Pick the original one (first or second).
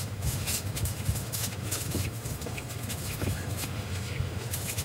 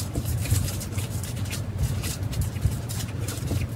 second